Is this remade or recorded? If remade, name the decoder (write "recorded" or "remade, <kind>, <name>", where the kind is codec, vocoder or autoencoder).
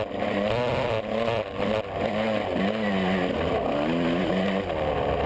recorded